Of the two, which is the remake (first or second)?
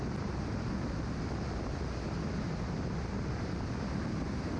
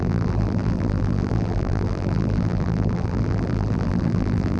second